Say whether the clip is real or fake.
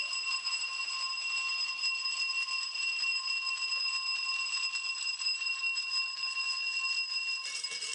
real